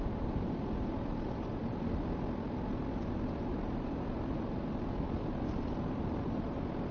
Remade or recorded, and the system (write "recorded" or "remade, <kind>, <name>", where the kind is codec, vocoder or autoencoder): remade, vocoder, BigVGAN v2